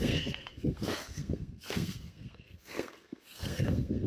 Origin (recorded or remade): remade